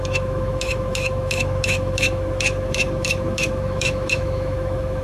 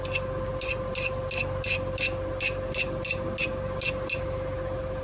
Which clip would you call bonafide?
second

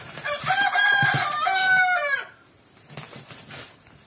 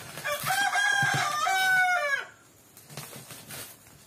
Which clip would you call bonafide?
second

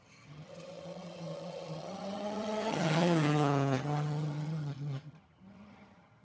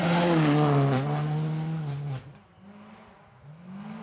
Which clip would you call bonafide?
second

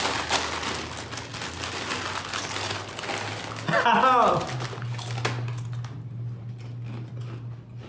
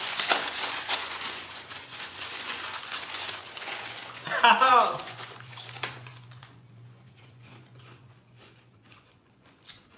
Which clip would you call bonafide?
first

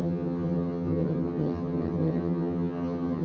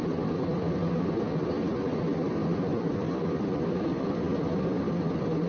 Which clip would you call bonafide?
second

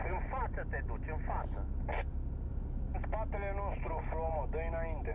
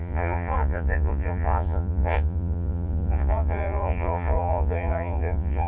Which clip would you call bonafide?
first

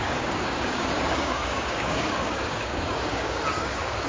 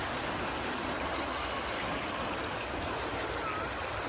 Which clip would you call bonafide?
second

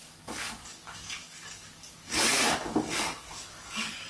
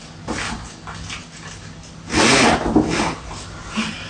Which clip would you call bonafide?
second